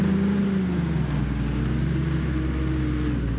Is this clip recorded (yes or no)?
yes